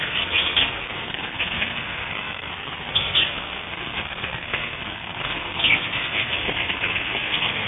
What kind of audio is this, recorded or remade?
remade